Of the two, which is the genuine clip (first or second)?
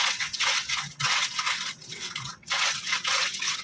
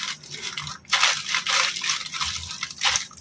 second